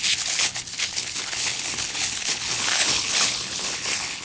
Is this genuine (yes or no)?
no